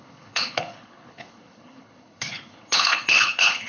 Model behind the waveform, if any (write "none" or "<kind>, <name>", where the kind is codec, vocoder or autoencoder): codec, HILCodec